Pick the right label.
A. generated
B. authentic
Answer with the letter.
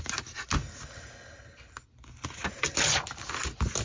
B